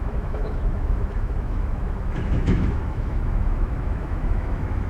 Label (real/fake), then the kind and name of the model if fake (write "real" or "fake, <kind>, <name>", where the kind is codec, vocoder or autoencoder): fake, autoencoder, DAC-VAE